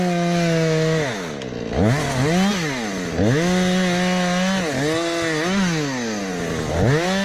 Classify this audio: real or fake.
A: real